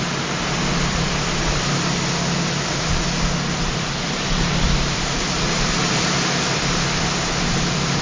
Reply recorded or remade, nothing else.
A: remade